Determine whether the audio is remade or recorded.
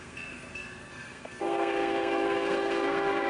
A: remade